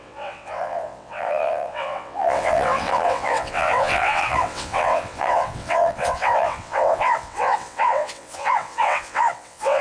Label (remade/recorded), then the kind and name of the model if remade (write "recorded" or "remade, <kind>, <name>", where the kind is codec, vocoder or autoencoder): remade, vocoder, WaveNeXt